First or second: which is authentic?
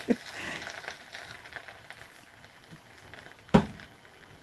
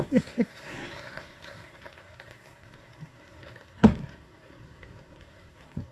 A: first